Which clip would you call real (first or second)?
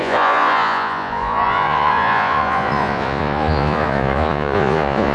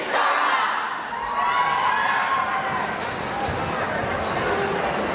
second